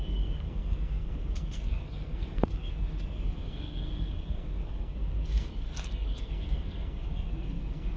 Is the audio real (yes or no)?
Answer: no